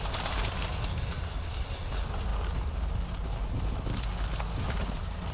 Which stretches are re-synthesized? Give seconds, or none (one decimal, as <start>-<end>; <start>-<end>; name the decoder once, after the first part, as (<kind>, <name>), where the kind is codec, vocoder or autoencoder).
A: none